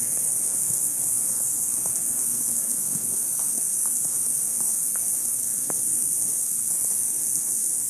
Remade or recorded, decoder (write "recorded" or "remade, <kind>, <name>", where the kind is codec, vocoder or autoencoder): remade, codec, SNAC